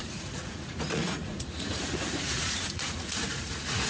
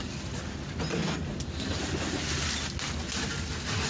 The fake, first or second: first